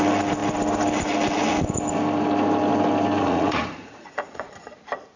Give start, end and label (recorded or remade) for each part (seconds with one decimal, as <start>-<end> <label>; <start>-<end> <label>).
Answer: 0.0-3.2 recorded; 3.2-4.6 remade; 4.6-5.2 recorded